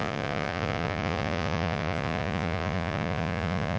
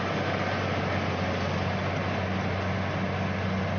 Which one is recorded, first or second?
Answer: second